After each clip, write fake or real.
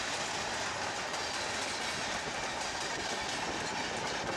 real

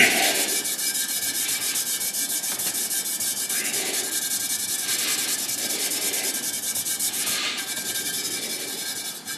real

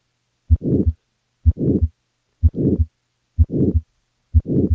real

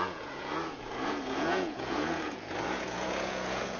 fake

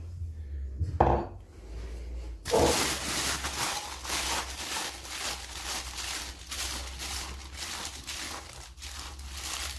real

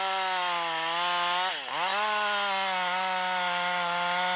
real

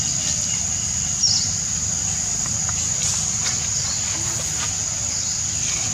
real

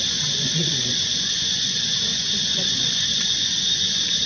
fake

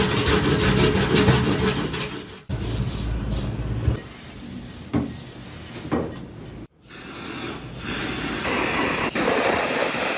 real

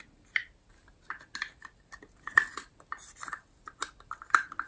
real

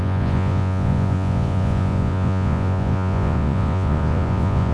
fake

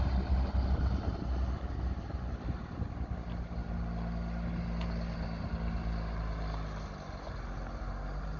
real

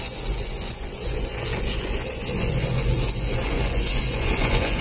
fake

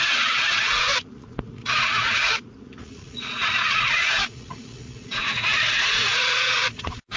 fake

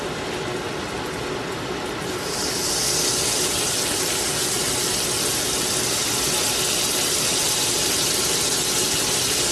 real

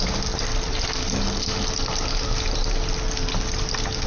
real